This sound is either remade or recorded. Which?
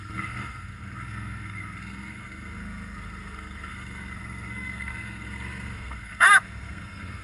remade